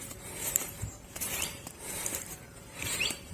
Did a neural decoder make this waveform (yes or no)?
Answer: yes